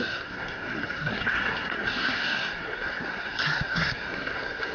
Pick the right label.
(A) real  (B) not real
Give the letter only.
B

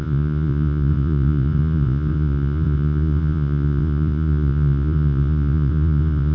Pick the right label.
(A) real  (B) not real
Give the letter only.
B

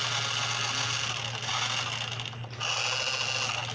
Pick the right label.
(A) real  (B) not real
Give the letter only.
A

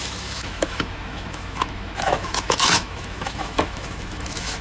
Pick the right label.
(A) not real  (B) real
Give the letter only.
A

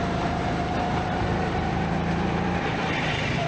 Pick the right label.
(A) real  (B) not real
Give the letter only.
B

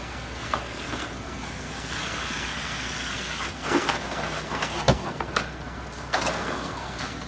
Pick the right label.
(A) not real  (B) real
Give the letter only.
A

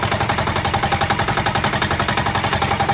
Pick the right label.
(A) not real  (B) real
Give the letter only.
B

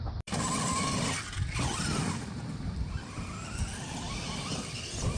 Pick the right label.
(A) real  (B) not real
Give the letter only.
A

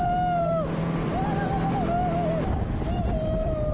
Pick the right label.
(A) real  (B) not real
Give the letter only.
A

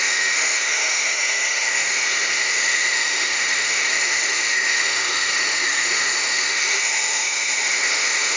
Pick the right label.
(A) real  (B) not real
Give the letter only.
B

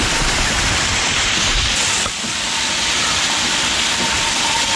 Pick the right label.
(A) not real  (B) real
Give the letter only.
B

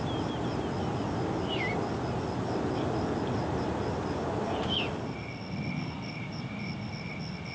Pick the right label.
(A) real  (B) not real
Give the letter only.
A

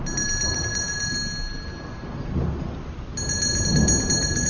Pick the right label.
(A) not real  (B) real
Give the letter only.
B